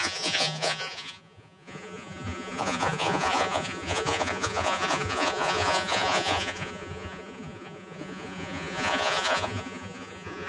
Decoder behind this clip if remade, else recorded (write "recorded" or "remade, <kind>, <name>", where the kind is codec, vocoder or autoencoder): remade, vocoder, Vocos